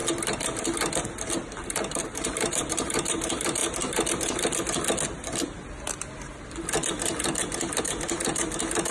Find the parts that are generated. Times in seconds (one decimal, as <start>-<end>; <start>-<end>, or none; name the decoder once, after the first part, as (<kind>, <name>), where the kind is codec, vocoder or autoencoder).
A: 1.9-3.6 (vocoder, BigVGAN v2); 7.8-8.9